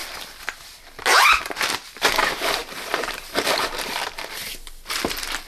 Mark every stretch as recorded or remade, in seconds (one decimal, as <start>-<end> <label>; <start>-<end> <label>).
0.0-2.6 recorded; 2.6-3.9 remade; 3.9-5.5 recorded